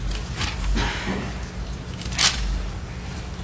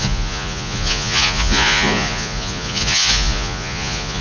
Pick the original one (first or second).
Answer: first